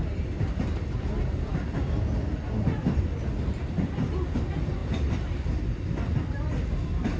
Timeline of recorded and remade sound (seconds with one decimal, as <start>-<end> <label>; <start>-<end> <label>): 0.0-7.2 recorded